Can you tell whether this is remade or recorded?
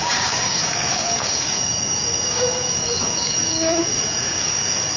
remade